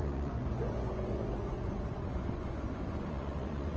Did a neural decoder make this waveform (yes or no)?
yes